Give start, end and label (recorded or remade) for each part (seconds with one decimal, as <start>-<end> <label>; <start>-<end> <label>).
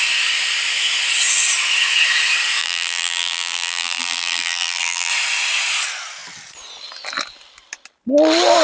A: 0.0-2.6 recorded; 2.6-5.1 remade; 5.1-8.6 recorded